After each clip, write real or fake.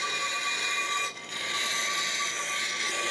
real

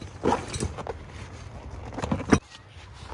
real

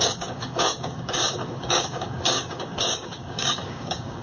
fake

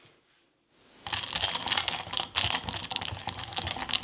real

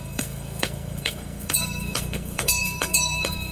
fake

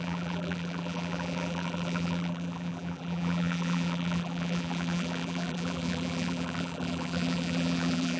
fake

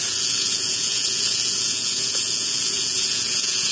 fake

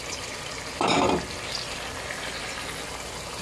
real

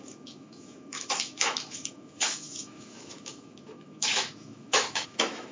fake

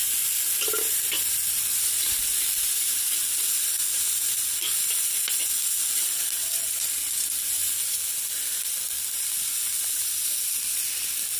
real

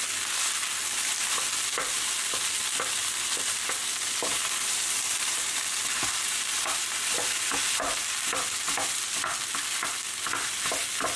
real